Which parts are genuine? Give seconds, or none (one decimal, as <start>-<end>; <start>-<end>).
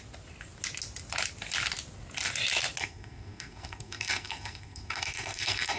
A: 0.0-2.8